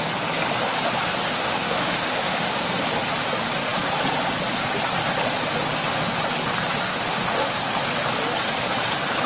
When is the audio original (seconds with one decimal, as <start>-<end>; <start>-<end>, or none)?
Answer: 0.0-1.3; 2.6-6.9; 7.5-9.3